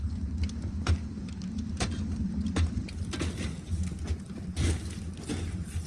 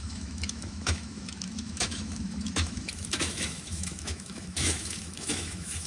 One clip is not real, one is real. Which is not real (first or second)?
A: second